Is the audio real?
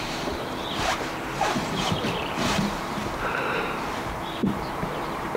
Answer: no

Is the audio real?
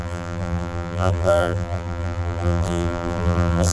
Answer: no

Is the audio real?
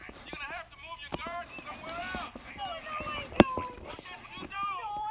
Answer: no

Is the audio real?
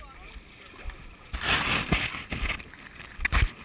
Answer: yes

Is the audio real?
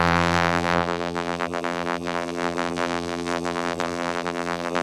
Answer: no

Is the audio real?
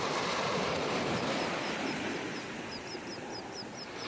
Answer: no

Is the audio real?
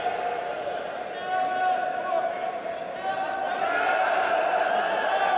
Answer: yes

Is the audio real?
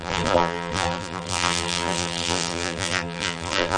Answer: no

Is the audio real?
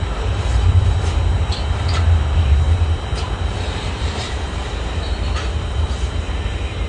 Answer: no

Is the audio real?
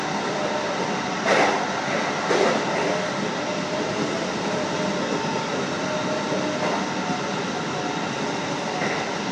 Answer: yes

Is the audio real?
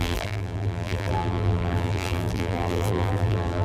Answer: no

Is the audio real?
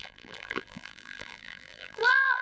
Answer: no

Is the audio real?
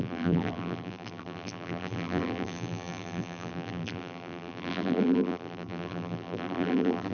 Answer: no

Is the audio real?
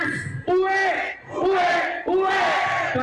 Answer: yes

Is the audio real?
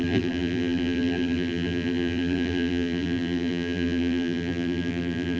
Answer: no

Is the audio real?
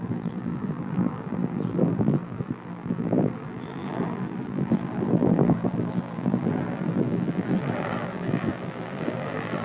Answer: no